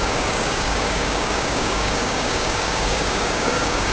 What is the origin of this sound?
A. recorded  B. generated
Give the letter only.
B